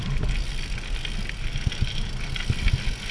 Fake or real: real